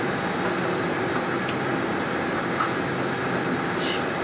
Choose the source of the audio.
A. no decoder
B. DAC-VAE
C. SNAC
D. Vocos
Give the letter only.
A